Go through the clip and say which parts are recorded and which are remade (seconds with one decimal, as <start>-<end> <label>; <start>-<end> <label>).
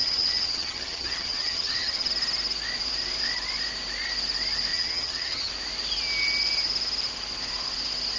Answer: 0.0-2.1 remade; 2.1-4.7 recorded; 4.7-5.5 remade; 5.5-8.2 recorded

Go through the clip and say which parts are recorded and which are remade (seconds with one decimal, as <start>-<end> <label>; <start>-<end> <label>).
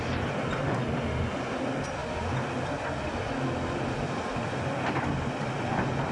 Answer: 0.0-6.1 recorded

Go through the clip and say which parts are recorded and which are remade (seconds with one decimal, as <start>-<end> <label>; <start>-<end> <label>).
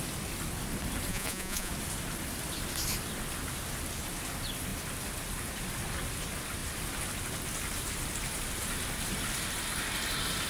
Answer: 0.0-1.1 recorded; 1.1-1.7 remade; 1.7-10.5 recorded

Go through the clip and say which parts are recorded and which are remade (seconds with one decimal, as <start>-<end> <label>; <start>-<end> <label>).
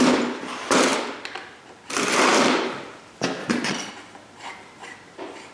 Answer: 0.0-3.4 recorded; 3.4-3.9 remade; 3.9-5.5 recorded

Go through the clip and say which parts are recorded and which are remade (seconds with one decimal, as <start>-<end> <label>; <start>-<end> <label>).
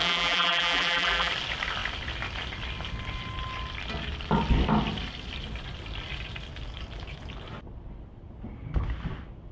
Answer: 0.0-1.3 remade; 1.3-9.5 recorded